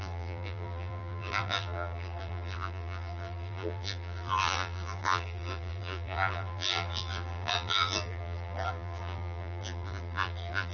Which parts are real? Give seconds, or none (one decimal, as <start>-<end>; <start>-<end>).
none